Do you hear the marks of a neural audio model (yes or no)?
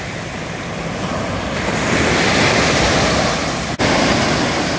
no